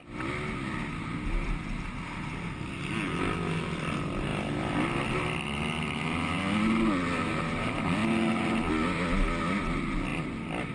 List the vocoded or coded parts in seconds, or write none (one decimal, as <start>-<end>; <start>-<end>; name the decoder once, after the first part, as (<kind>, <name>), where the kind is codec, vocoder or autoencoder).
none